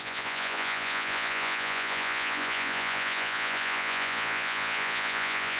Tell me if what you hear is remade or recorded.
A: remade